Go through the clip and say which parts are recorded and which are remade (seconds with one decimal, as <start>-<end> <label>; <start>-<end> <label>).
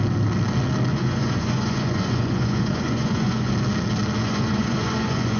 0.0-0.9 recorded; 0.9-3.5 remade; 3.5-4.2 recorded; 4.2-5.4 remade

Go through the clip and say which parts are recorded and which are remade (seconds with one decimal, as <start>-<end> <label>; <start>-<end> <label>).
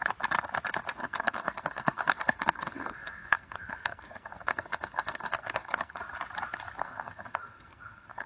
0.0-1.0 recorded; 1.0-6.0 remade; 6.0-6.8 recorded; 6.8-8.3 remade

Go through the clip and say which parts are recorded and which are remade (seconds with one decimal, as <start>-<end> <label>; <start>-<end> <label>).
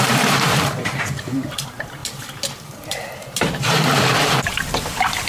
0.0-2.0 remade; 2.0-2.9 recorded; 2.9-5.3 remade